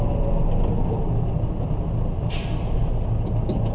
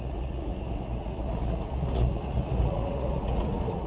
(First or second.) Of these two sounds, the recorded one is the first